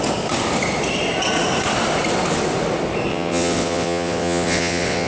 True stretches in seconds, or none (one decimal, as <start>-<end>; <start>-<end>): 0.0-3.1